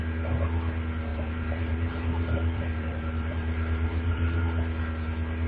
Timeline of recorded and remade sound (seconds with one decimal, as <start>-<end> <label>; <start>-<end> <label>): 0.0-1.1 recorded; 1.1-4.4 remade; 4.4-5.5 recorded